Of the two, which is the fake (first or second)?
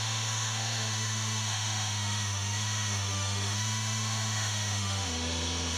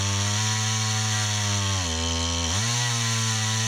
first